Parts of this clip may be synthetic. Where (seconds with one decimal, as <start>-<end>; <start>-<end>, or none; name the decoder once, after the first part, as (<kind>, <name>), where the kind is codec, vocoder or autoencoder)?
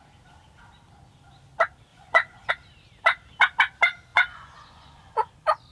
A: 1.9-2.5 (vocoder, Vocos); 4.1-5.3